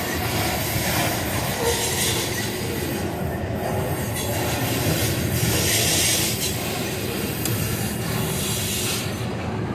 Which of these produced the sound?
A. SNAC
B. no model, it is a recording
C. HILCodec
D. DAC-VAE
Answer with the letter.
B